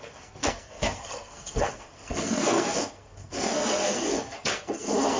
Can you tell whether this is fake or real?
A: fake